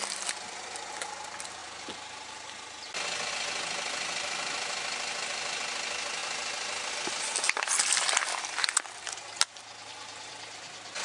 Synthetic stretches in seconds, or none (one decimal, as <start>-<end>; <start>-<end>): none